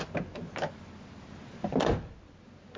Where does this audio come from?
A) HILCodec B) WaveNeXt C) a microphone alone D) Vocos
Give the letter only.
C